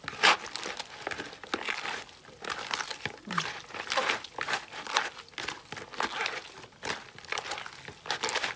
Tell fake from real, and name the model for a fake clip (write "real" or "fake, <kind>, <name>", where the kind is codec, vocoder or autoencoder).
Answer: real